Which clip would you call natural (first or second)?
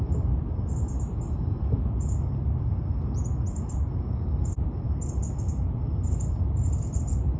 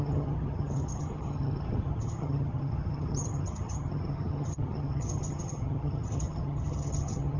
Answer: first